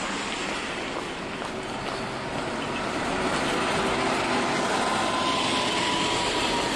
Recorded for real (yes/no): yes